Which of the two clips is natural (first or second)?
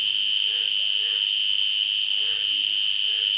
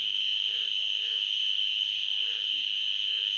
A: first